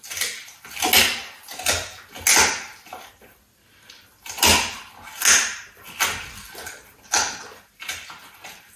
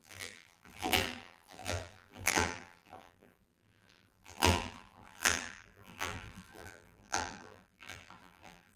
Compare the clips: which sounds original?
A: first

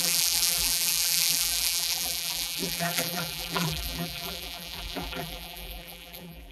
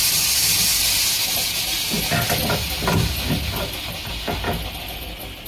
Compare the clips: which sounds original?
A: second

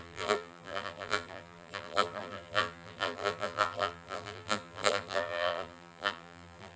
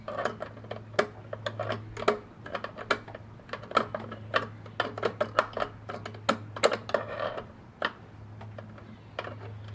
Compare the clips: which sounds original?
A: second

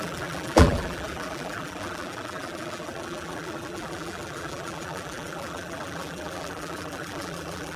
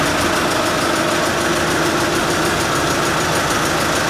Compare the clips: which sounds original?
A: second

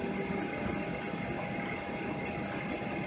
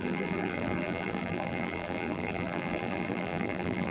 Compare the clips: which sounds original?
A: first